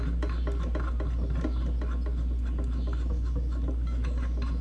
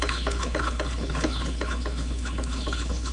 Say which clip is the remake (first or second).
second